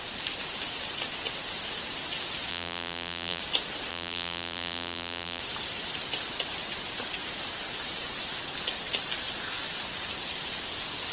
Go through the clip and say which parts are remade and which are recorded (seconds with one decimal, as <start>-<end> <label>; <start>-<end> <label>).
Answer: 0.0-2.5 recorded; 2.5-3.4 remade; 3.4-3.9 recorded; 3.9-5.4 remade; 5.4-11.1 recorded